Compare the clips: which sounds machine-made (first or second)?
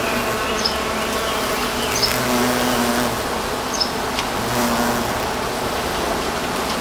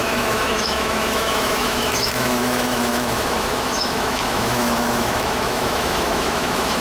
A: second